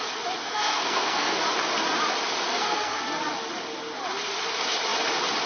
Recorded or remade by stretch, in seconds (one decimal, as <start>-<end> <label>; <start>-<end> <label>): 0.0-0.4 recorded; 0.4-1.4 remade; 1.4-2.5 recorded; 2.5-3.0 remade; 3.0-5.5 recorded